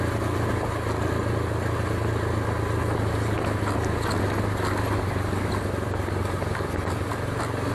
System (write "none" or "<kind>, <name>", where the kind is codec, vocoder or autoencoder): none